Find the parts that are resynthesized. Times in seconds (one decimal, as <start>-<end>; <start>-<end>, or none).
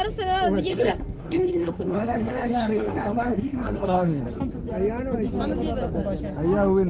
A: 0.7-4.2